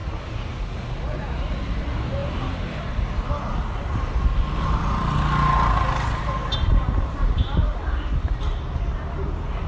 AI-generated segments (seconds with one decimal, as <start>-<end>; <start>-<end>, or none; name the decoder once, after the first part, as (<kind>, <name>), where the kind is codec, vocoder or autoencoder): 0.0-1.8 (vocoder, BigVGAN v2); 6.4-8.4